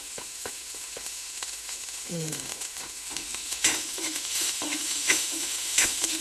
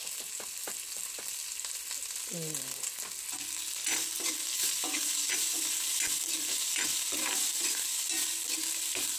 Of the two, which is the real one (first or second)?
second